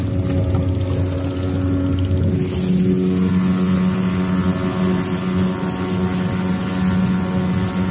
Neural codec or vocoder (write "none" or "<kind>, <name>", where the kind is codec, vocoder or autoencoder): none